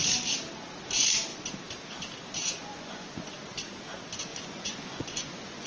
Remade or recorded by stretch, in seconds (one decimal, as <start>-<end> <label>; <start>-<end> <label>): 0.0-2.4 recorded; 2.4-3.4 remade; 3.4-4.3 recorded; 4.3-5.7 remade